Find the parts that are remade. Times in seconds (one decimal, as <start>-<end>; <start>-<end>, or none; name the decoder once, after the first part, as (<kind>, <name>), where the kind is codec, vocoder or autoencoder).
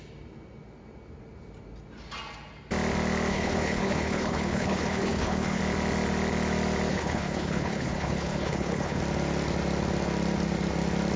3.3-5.6 (codec, HILCodec); 6.9-9.0